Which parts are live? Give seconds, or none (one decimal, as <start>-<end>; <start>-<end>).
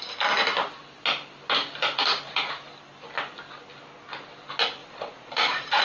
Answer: 0.0-1.8; 2.5-4.8